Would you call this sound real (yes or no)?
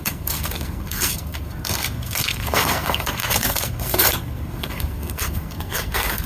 no